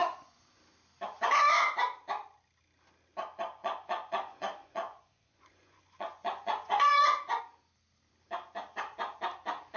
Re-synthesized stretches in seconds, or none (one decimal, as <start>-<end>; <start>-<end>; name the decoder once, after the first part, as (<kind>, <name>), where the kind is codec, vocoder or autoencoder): 0.0-0.6 (vocoder, Vocos); 3.6-7.4